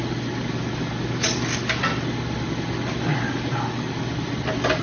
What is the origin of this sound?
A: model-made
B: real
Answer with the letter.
B